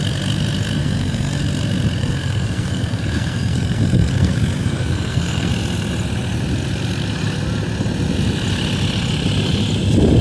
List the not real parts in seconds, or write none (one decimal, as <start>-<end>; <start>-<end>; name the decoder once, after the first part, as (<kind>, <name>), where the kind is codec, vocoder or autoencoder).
0.8-1.4 (codec, SNAC); 2.0-5.5

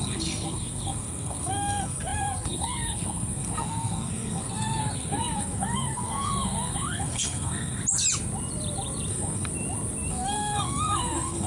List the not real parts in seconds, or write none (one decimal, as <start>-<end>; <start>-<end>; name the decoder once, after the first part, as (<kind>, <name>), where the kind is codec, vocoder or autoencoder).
0.0-7.8 (codec, SNAC); 9.1-9.5; 10.1-11.5

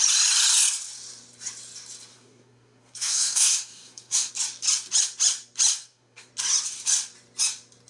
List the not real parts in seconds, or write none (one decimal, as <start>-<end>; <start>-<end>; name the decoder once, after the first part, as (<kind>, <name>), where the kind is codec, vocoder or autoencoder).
2.1-4.3 (codec, SNAC); 5.7-6.3

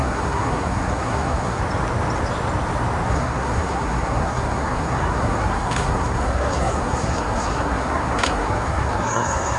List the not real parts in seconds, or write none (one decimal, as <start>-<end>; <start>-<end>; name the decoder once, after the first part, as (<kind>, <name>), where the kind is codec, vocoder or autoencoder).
0.0-1.6 (codec, SNAC); 3.1-9.6

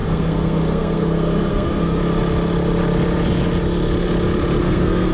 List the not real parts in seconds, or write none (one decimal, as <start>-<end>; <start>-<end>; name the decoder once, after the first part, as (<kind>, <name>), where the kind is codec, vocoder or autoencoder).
0.0-2.0 (codec, SNAC); 4.6-5.1

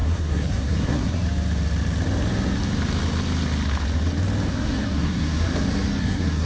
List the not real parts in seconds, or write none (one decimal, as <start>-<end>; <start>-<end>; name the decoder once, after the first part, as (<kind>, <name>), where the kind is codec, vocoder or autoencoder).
0.0-1.2 (codec, SNAC); 4.5-5.5; 6.0-6.5

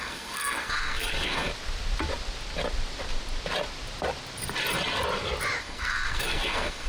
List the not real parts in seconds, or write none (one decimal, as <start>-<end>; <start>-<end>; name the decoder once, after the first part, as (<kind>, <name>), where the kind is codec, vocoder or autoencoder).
0.0-1.5 (codec, SNAC); 5.6-6.9

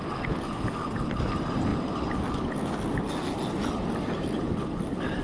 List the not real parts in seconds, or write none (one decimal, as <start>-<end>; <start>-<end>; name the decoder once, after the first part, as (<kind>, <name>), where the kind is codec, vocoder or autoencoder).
none